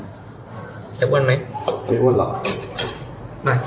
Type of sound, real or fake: fake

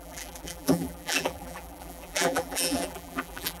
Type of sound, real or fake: fake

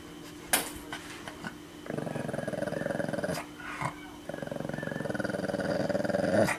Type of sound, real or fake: real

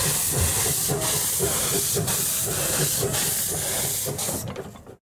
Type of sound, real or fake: real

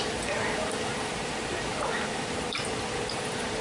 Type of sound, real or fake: fake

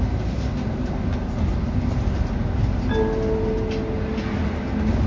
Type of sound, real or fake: real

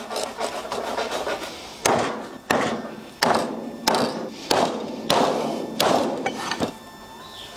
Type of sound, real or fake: real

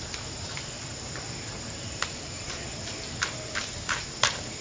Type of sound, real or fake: fake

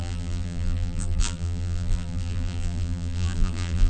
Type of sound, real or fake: fake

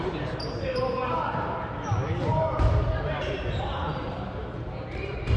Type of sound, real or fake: fake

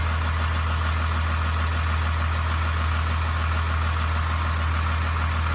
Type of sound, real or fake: real